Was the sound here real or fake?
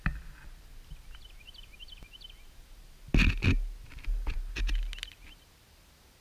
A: real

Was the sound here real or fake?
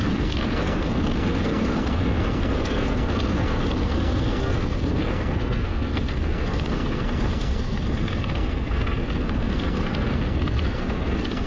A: fake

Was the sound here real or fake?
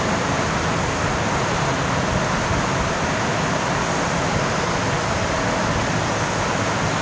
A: real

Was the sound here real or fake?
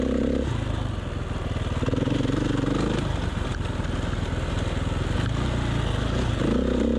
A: real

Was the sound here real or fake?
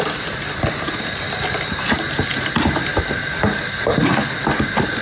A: real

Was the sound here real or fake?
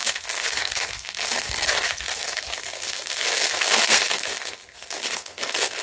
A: fake